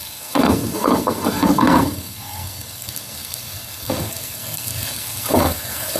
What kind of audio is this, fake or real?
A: fake